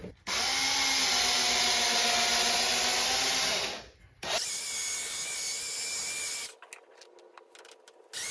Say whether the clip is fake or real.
real